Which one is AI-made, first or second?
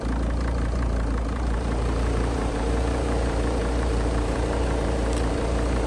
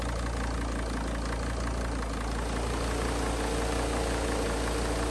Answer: first